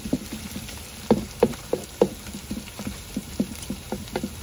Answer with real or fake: real